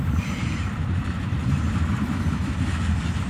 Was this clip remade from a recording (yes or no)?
yes